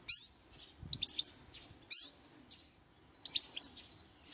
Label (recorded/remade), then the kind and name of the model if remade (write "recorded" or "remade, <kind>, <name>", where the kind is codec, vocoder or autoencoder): recorded